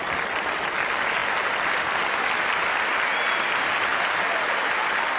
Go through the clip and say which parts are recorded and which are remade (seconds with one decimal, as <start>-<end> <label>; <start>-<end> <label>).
0.0-5.2 recorded